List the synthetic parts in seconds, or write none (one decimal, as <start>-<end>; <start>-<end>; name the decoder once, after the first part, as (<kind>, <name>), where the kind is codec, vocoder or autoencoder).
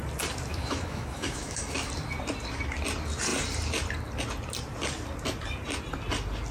0.5-1.9 (autoencoder, DAC-VAE)